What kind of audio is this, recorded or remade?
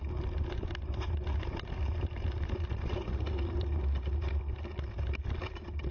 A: recorded